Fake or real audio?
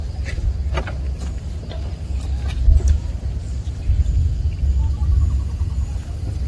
real